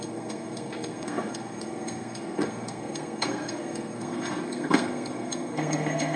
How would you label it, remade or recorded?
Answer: remade